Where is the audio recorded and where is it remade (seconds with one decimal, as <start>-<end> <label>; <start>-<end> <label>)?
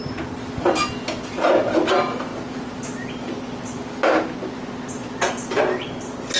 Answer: 0.0-6.4 recorded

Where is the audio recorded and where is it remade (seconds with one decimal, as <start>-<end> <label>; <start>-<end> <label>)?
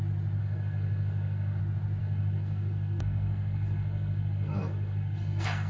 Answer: 0.0-0.4 recorded; 0.4-1.6 remade; 1.6-2.0 recorded; 2.0-5.7 remade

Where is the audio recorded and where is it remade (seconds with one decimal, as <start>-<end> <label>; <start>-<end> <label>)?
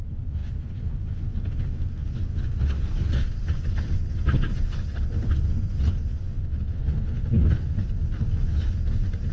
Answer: 0.0-0.4 recorded; 0.4-1.0 remade; 1.0-3.4 recorded; 3.4-8.4 remade; 8.4-9.3 recorded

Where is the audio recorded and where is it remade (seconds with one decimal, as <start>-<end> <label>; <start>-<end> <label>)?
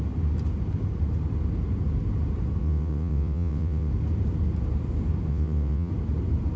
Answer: 0.0-2.6 recorded; 2.6-3.9 remade; 3.9-5.3 recorded; 5.3-5.9 remade; 5.9-6.6 recorded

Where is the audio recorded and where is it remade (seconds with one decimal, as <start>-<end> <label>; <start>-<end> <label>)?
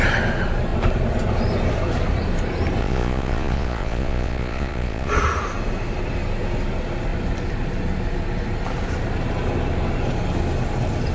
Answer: 0.0-2.8 recorded; 2.8-5.1 remade; 5.1-11.1 recorded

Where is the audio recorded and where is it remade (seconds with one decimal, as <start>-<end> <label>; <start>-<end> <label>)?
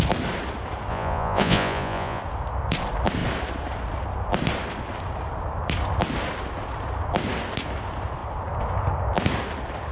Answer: 0.0-0.9 recorded; 0.9-2.2 remade; 2.2-9.9 recorded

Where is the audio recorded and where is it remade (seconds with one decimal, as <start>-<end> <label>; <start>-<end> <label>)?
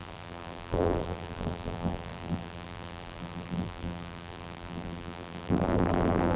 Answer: 0.0-6.4 remade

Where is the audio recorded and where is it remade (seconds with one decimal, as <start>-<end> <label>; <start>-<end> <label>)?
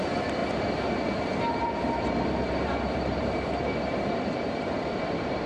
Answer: 0.0-0.4 remade; 0.4-1.5 recorded; 1.5-5.5 remade